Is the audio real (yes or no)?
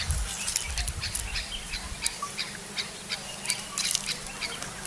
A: yes